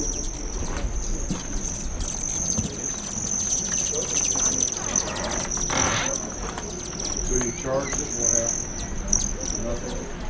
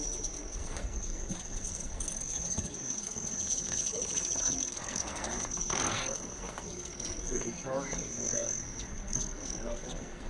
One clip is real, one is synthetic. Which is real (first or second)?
first